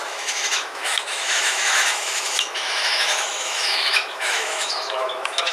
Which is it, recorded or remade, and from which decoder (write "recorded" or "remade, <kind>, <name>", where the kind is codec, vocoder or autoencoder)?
remade, autoencoder, DAC-VAE